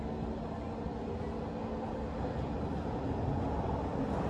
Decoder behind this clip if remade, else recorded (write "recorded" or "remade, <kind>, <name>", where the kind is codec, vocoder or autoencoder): recorded